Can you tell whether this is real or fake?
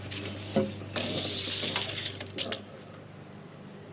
real